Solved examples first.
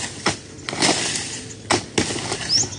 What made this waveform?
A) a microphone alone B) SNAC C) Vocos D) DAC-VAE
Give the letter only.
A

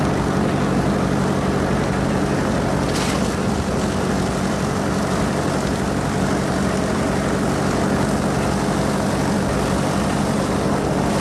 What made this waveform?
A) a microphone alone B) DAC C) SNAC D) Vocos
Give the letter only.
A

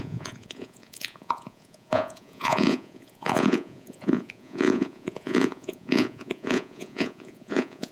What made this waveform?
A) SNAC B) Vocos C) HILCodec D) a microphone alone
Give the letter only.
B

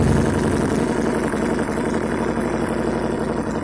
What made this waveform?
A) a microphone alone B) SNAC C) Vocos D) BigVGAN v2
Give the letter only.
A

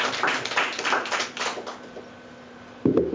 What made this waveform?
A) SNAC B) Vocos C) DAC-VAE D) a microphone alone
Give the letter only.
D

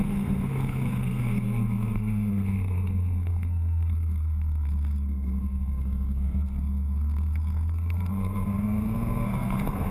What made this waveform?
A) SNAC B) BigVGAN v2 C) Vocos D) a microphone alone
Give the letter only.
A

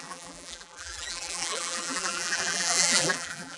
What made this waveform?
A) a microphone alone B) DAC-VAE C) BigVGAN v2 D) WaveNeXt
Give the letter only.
C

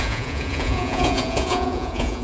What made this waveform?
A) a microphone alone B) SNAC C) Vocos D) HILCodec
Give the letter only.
C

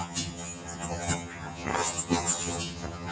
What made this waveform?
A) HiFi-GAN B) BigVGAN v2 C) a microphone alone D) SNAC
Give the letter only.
A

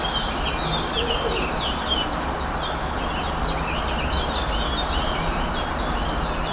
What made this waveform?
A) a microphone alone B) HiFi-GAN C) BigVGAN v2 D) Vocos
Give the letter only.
A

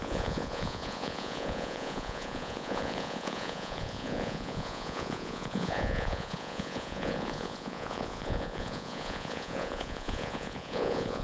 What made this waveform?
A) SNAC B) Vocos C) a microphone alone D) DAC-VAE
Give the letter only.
B